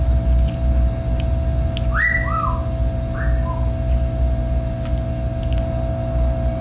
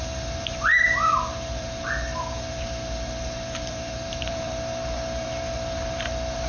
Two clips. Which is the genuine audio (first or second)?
first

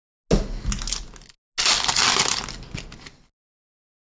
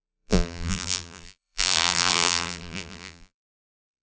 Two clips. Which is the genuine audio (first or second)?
first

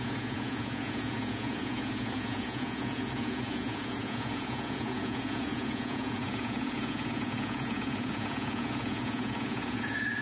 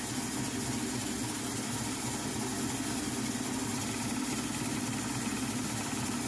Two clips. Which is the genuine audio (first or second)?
second